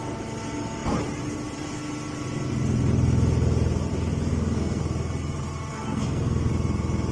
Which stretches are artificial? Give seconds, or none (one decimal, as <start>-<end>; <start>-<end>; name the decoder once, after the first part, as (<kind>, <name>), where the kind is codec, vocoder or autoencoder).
4.3-4.8 (codec, SNAC); 5.7-6.5